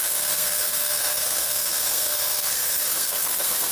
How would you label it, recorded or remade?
remade